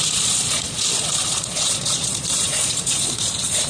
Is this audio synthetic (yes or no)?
yes